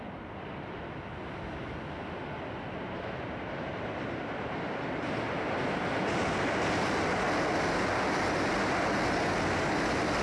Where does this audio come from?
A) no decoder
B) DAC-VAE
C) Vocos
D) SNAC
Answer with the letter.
A